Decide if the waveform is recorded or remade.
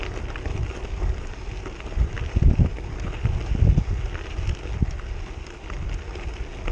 recorded